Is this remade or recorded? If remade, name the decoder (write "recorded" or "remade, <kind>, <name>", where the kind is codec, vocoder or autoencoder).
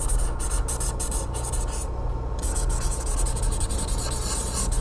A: recorded